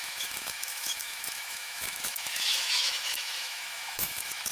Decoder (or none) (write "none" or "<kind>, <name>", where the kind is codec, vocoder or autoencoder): autoencoder, DAC-VAE